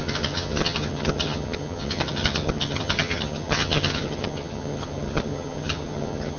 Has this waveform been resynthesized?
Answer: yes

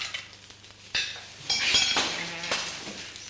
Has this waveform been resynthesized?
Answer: no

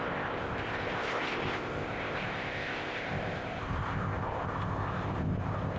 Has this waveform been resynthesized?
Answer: yes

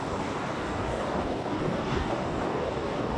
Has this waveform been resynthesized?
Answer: yes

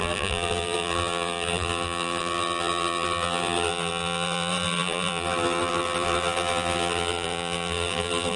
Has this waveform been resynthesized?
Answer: yes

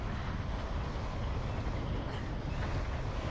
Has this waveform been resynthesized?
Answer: no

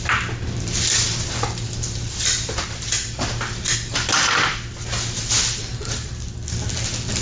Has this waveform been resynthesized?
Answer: no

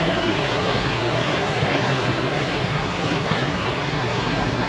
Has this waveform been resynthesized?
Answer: yes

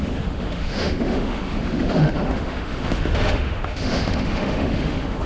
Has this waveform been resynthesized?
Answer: yes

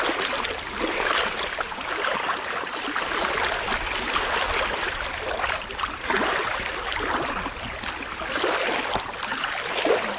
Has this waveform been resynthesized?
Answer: no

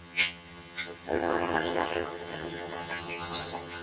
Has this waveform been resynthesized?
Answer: yes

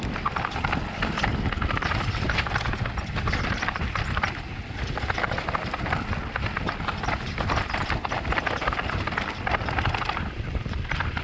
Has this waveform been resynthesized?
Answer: yes